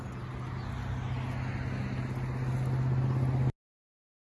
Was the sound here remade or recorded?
recorded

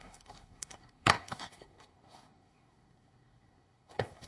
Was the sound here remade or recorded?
remade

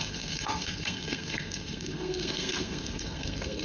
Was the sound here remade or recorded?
remade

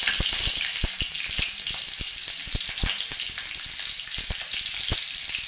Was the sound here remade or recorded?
recorded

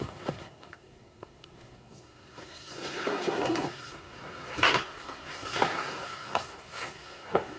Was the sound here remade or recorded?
remade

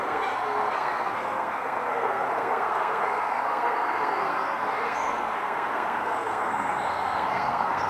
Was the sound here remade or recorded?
remade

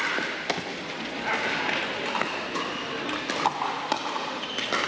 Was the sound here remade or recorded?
recorded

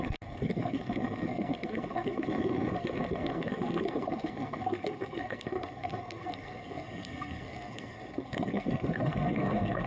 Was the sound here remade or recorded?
remade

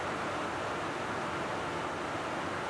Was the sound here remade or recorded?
recorded